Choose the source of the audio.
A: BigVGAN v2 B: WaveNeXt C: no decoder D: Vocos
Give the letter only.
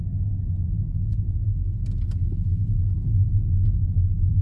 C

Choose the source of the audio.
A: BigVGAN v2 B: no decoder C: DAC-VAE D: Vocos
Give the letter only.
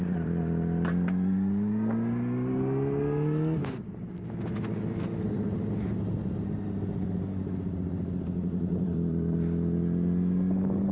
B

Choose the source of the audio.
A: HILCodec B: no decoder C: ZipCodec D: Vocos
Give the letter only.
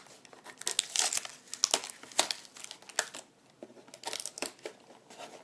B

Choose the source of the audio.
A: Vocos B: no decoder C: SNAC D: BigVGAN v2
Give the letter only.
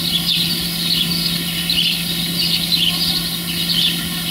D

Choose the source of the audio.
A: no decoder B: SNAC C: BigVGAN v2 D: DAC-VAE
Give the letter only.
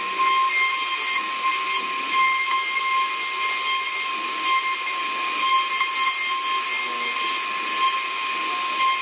A